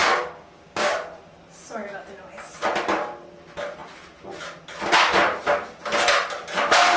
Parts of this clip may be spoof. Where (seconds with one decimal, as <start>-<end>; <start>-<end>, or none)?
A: 0.0-0.9